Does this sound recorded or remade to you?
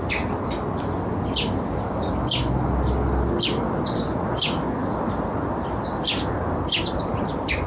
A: recorded